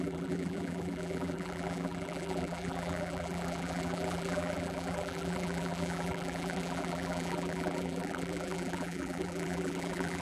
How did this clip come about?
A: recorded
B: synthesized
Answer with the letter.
B